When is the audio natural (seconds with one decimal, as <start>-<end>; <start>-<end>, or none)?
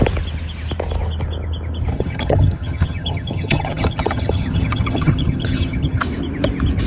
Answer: 0.0-1.9; 6.0-6.9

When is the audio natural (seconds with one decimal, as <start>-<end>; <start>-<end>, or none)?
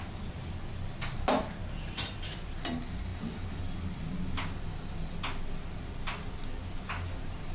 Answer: 0.0-1.6; 2.2-7.5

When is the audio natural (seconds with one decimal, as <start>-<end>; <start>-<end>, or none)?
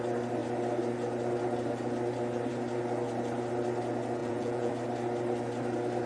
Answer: 0.0-4.2; 4.7-6.1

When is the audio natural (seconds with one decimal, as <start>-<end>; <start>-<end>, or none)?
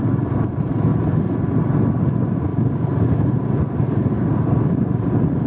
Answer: 0.9-2.0; 2.5-3.1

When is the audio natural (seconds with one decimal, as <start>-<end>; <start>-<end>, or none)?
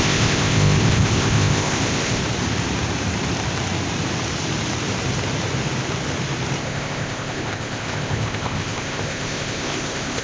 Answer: 2.2-6.6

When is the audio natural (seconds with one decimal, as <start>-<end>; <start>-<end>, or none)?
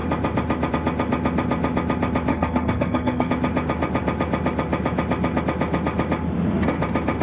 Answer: 0.0-2.3; 3.3-7.2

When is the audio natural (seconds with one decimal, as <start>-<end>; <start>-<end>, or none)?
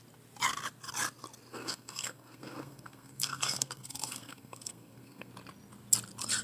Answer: 0.0-1.5; 5.3-6.4